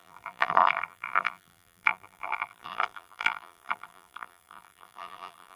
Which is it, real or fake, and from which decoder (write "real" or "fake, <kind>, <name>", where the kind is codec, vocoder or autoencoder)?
fake, vocoder, BigVGAN v2